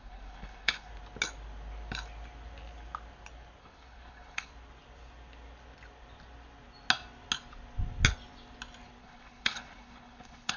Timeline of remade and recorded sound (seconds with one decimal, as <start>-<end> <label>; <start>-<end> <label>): 0.0-0.9 remade; 0.9-3.6 recorded; 3.6-4.5 remade; 4.5-9.0 recorded; 9.0-10.6 remade